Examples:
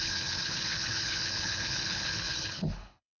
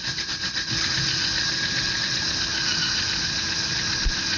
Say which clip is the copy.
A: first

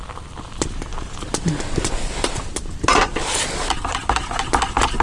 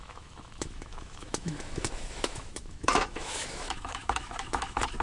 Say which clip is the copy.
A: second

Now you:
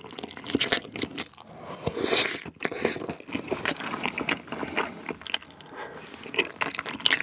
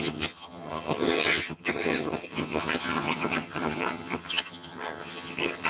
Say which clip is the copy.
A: second